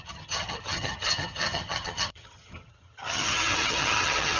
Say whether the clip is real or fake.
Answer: fake